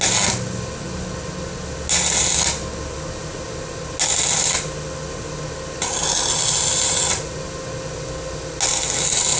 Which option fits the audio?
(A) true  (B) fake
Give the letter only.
A